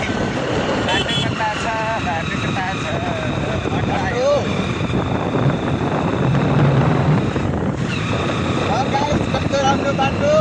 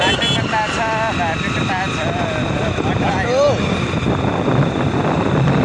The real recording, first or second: second